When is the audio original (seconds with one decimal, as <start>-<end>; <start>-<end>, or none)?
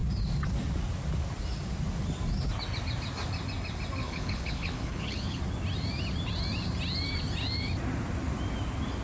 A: 0.0-4.0; 5.4-9.0